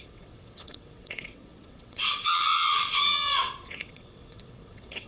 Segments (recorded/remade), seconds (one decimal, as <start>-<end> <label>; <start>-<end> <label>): 0.0-5.1 remade

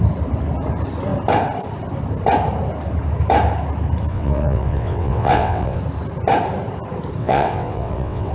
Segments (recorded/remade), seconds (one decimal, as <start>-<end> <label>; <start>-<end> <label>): 0.0-4.1 recorded; 4.1-5.8 remade; 5.8-7.2 recorded; 7.2-8.3 remade

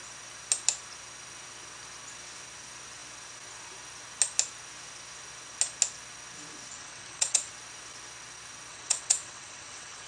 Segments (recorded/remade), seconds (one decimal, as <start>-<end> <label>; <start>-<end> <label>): 0.0-6.7 recorded; 6.7-7.5 remade; 7.5-8.7 recorded; 8.7-10.1 remade

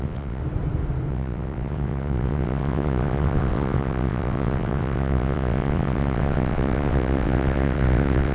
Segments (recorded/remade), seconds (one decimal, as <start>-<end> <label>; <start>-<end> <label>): 0.0-0.4 remade; 0.4-1.1 recorded; 1.1-8.3 remade